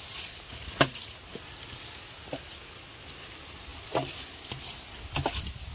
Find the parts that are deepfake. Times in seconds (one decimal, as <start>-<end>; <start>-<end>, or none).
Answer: none